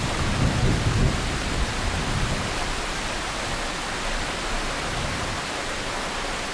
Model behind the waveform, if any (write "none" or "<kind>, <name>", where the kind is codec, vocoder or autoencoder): none